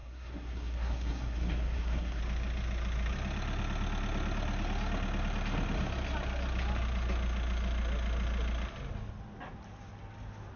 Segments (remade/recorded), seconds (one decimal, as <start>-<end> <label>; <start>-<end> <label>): 0.0-2.2 remade; 2.2-10.6 recorded